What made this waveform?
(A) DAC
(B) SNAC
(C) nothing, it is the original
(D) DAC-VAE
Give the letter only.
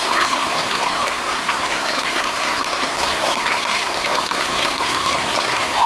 B